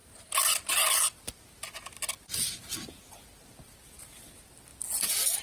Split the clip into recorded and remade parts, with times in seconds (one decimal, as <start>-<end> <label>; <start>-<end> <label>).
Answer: 0.0-5.4 recorded